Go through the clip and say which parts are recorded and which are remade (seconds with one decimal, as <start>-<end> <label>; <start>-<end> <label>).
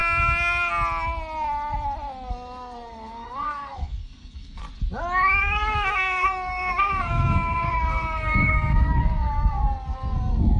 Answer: 0.0-2.3 recorded; 2.3-4.6 remade; 4.6-5.4 recorded; 5.4-10.6 remade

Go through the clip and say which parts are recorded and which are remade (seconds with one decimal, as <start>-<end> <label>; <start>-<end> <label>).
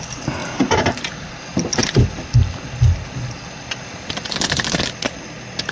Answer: 0.0-5.7 recorded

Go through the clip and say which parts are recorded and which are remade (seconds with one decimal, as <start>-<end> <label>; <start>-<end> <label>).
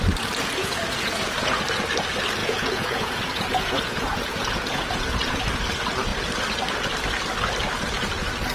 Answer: 0.0-0.6 recorded; 0.6-1.6 remade; 1.6-2.4 recorded; 2.4-5.4 remade; 5.4-8.5 recorded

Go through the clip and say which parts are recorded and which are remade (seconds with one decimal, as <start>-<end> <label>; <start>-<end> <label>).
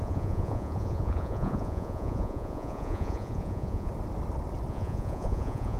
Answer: 0.0-3.9 remade; 3.9-4.7 recorded; 4.7-5.8 remade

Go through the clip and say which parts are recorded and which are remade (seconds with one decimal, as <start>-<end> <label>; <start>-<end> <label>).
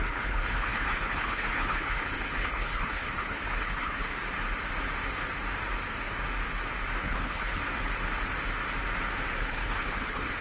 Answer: 0.0-4.1 remade; 4.1-7.0 recorded; 7.0-7.6 remade; 7.6-9.4 recorded; 9.4-10.4 remade